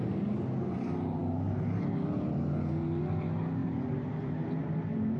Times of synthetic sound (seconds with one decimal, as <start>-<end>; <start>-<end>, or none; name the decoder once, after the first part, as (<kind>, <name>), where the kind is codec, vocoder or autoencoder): 3.6-4.7 (vocoder, BigVGAN v2)